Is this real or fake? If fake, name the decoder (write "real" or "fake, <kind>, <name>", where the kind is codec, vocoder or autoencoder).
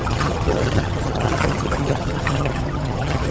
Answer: fake, vocoder, HiFi-GAN